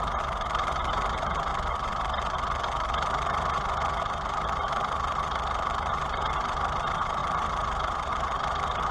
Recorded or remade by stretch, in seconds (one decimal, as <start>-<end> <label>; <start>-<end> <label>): 0.0-1.5 remade; 1.5-3.9 recorded; 3.9-8.9 remade